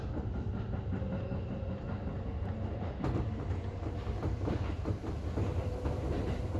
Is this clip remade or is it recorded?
remade